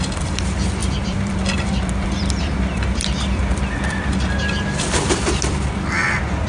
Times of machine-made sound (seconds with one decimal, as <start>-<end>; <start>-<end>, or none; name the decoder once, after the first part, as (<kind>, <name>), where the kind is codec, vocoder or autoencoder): 0.0-6.5 (vocoder, BigVGAN v2)